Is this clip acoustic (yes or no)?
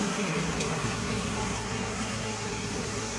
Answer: no